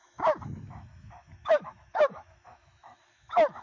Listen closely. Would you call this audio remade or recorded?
remade